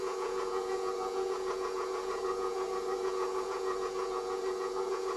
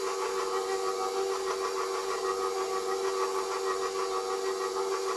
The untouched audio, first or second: second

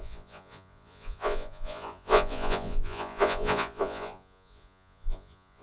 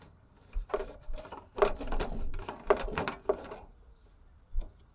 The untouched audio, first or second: second